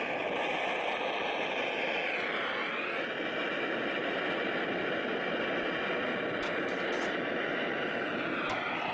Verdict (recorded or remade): recorded